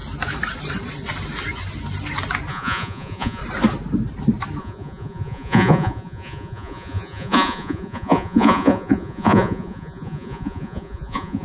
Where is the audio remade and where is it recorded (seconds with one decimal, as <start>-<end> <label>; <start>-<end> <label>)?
0.0-2.5 recorded; 2.5-3.4 remade; 3.4-4.6 recorded; 4.6-11.4 remade